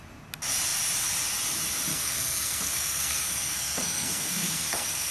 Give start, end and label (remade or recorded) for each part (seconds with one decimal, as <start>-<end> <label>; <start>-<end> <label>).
0.0-1.9 recorded; 1.9-5.1 remade